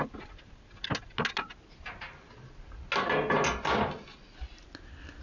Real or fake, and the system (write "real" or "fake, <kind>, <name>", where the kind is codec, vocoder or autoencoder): real